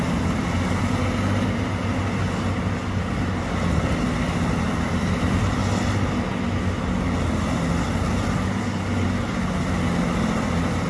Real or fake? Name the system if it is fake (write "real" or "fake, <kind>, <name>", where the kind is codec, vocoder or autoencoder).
real